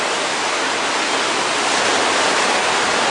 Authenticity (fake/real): real